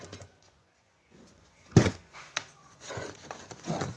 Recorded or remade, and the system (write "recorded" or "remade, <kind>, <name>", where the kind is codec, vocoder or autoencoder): remade, vocoder, Vocos